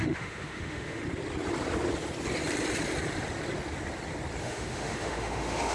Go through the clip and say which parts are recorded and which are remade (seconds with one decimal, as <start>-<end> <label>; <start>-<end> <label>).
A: 0.0-1.0 remade; 1.0-4.4 recorded; 4.4-5.7 remade